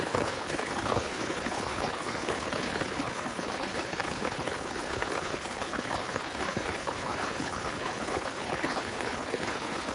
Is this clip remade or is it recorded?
remade